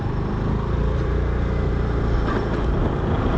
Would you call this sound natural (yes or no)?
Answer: yes